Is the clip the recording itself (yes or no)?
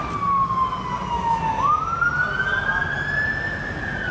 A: yes